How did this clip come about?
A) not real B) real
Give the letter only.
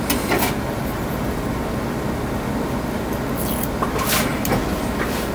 B